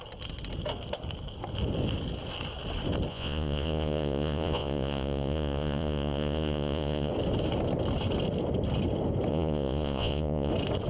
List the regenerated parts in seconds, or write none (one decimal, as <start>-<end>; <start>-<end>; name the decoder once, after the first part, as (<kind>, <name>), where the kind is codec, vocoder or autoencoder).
3.1-7.1 (vocoder, Vocos); 9.3-10.5